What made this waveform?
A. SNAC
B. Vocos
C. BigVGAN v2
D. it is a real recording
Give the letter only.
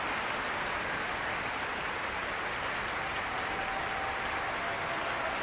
D